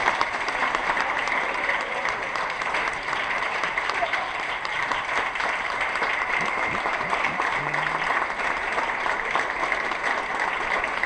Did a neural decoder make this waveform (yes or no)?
yes